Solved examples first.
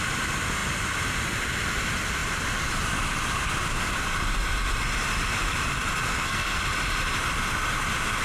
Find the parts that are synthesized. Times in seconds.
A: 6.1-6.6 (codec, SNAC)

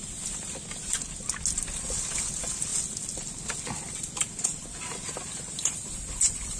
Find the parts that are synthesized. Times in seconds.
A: none

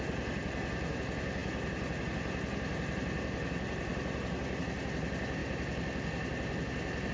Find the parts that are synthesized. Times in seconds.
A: none

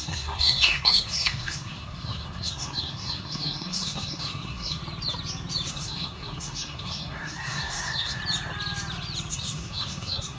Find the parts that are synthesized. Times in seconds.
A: 0.0-4.8 (codec, SNAC); 5.7-8.2; 9.3-10.4

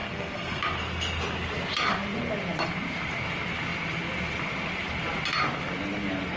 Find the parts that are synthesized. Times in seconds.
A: 0.0-0.6 (codec, SNAC)